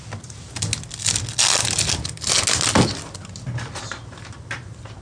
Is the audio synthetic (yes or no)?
no